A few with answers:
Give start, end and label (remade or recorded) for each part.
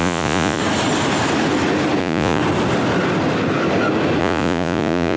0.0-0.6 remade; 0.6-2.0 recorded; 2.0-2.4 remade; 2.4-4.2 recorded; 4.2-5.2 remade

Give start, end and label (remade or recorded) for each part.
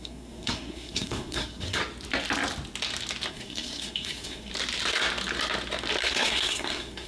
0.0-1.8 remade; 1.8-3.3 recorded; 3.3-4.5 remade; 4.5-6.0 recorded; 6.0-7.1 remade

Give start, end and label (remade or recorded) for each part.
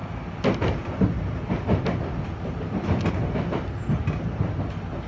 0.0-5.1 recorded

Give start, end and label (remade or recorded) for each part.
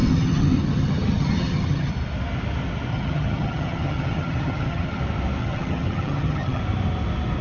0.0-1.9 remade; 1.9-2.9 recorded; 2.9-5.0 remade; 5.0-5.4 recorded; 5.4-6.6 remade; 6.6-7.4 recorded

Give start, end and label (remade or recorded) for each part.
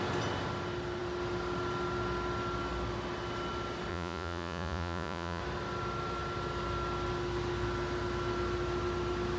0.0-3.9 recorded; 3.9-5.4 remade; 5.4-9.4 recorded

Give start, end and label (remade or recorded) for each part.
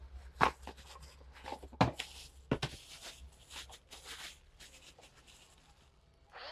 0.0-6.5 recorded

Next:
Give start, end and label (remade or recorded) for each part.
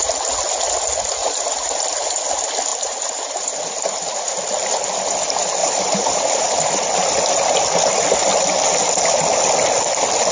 0.0-1.2 recorded; 1.2-1.8 remade; 1.8-2.7 recorded; 2.7-4.1 remade; 4.1-5.6 recorded; 5.6-7.1 remade; 7.1-10.3 recorded